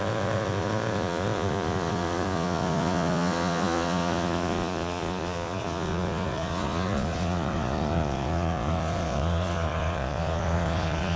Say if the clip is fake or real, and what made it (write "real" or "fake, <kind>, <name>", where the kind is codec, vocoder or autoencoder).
fake, vocoder, Vocos